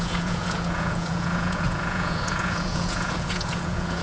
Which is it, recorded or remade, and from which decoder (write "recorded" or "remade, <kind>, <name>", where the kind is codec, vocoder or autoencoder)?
remade, vocoder, Vocos